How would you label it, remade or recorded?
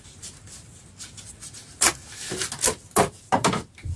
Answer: recorded